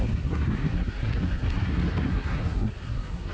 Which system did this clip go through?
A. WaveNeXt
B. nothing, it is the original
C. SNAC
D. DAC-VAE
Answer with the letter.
C